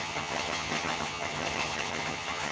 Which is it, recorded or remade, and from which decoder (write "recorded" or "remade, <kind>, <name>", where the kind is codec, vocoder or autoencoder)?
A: remade, vocoder, HiFi-GAN